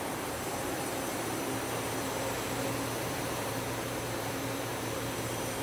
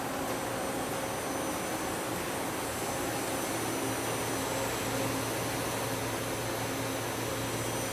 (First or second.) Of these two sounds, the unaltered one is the second